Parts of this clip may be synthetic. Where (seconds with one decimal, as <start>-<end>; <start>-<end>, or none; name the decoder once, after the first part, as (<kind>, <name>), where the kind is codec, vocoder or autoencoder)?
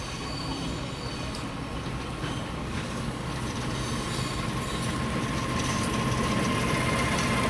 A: 2.6-3.3 (codec, DAC)